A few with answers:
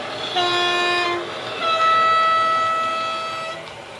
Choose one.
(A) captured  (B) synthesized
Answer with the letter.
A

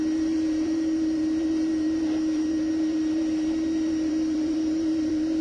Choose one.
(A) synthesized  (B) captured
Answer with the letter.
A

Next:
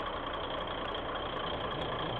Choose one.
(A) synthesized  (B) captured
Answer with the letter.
B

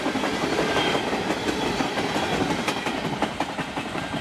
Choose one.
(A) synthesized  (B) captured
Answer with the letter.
A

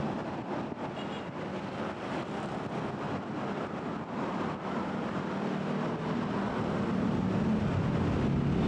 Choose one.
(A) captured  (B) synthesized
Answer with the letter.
A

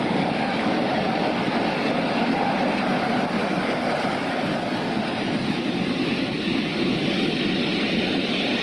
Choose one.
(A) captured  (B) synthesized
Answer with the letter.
A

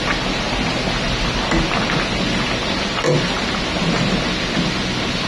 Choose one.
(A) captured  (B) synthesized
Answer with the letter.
A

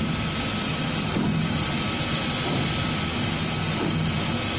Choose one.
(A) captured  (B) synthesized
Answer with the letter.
A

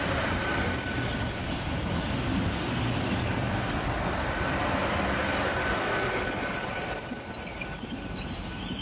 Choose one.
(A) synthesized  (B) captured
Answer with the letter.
B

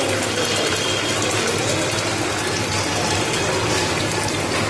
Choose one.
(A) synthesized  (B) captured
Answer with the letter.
B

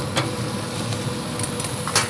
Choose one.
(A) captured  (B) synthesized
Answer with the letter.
A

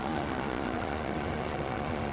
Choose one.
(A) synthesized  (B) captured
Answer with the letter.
A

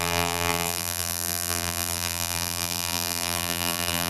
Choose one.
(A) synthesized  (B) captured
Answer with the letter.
A